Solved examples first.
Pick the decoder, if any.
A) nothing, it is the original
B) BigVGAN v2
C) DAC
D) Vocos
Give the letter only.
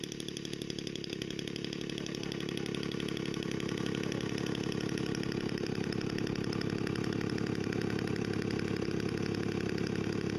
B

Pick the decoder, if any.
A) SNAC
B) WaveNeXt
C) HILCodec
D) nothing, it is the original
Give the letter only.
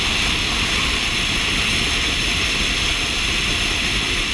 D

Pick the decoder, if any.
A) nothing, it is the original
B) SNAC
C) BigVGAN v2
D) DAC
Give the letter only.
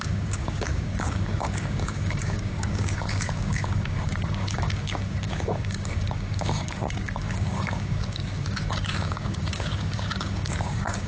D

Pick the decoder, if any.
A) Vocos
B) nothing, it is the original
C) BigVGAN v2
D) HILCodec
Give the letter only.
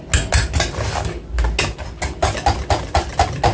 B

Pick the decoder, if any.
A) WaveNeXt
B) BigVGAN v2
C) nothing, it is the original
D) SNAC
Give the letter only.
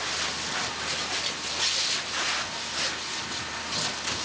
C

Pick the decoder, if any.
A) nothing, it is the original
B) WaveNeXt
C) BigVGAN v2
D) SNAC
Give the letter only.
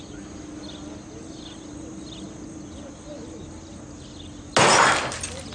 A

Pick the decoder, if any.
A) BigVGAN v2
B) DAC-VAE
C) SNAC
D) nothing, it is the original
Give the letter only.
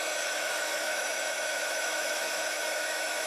B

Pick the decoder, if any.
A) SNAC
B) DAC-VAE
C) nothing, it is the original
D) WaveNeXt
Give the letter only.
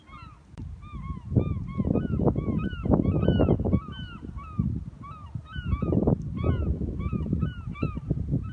C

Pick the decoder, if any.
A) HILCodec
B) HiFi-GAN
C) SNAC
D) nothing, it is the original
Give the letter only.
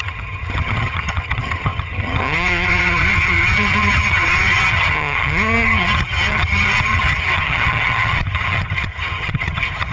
B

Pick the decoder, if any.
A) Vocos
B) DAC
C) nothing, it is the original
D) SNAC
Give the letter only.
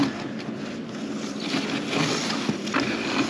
C